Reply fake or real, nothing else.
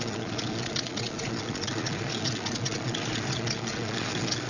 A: fake